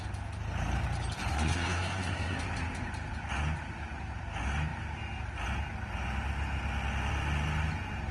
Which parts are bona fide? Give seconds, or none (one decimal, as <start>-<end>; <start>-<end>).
0.0-1.3; 2.4-8.1